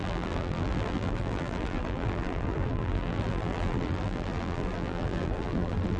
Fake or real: fake